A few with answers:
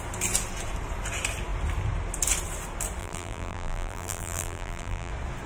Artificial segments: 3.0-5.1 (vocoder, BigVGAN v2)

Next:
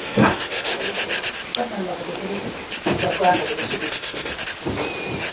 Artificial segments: 0.0-0.7 (codec, SNAC); 3.9-4.3

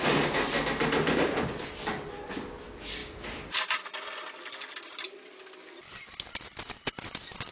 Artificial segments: none

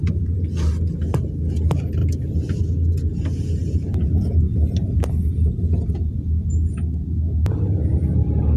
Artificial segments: 2.0-2.6 (vocoder, BigVGAN v2)

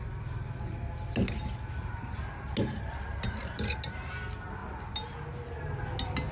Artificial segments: none